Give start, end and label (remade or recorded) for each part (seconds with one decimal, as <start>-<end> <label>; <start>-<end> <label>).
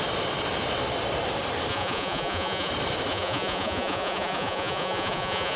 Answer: 0.0-1.7 recorded; 1.7-2.7 remade; 2.7-3.1 recorded; 3.1-5.6 remade